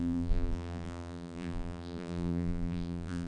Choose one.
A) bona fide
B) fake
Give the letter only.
B